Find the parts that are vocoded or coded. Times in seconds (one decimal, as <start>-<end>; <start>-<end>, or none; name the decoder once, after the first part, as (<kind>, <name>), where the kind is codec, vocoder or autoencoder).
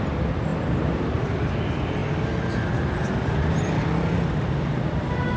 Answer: none